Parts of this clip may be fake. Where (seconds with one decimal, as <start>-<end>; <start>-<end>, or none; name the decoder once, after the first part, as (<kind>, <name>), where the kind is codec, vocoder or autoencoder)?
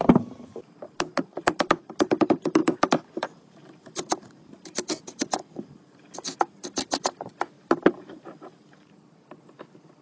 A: 2.6-6.5 (vocoder, BigVGAN v2)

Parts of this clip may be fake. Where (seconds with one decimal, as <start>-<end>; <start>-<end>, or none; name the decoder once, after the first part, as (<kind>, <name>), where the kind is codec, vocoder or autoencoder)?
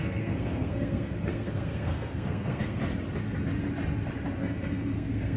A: 0.0-2.8 (codec, SNAC); 4.4-5.4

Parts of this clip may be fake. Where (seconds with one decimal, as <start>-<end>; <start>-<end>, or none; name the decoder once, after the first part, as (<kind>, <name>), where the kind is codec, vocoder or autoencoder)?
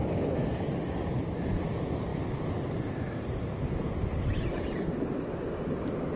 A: none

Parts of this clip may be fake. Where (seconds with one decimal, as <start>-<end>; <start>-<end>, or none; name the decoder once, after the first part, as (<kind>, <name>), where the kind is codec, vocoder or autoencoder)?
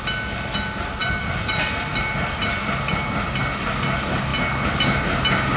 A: 1.0-3.4 (vocoder, BigVGAN v2); 4.3-5.1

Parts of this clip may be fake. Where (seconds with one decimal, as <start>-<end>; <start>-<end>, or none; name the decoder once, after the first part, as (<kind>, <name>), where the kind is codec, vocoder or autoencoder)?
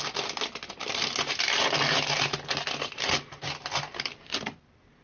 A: none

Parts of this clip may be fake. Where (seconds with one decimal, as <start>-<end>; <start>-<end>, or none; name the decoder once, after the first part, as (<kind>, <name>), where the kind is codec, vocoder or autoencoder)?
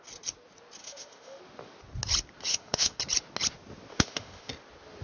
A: 0.8-1.4 (autoencoder, DAC-VAE); 2.5-3.0; 3.9-4.5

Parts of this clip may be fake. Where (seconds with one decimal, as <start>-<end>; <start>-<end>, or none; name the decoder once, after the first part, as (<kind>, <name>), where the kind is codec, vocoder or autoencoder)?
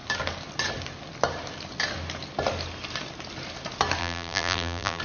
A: 4.0-5.0 (vocoder, BigVGAN v2)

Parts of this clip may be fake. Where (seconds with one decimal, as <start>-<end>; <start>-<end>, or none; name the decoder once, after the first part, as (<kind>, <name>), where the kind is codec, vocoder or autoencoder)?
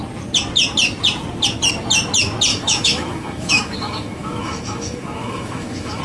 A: 2.5-6.0 (autoencoder, DAC-VAE)